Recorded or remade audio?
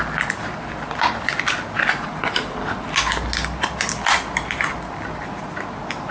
recorded